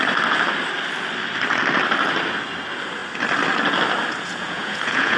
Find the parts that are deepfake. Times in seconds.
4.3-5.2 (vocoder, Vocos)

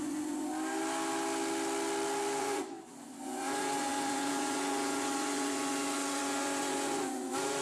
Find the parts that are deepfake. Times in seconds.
0.0-0.5 (vocoder, Vocos); 2.4-7.6

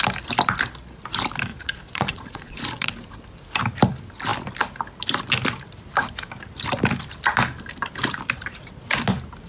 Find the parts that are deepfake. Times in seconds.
1.5-2.9 (vocoder, Vocos)

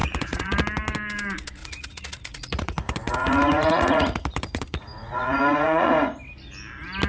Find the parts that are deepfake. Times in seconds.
0.0-0.6 (vocoder, Vocos); 1.6-5.9

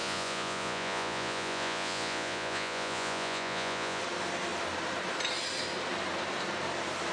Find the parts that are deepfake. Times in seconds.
0.0-4.0 (vocoder, Vocos)

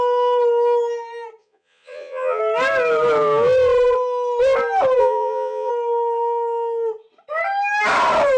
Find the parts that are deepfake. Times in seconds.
1.4-2.4 (vocoder, Vocos); 5.0-5.7